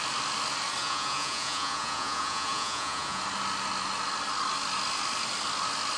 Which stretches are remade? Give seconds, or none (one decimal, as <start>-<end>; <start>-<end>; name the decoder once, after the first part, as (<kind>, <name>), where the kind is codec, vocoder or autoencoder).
0.8-3.2 (vocoder, Vocos)